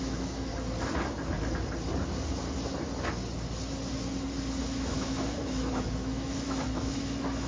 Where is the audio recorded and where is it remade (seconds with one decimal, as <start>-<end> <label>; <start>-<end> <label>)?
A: 0.0-0.5 remade; 0.5-4.6 recorded; 4.6-7.5 remade